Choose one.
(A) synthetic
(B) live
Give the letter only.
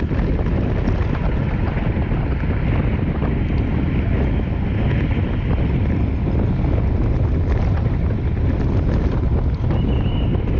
B